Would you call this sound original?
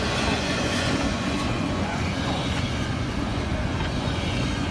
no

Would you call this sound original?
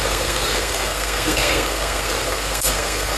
no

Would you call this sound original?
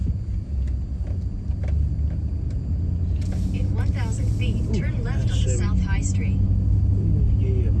yes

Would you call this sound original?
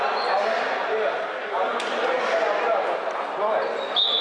yes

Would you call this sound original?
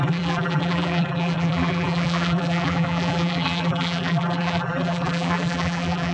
no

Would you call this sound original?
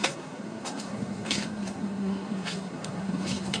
no